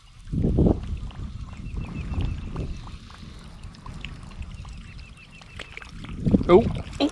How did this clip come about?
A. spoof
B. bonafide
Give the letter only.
B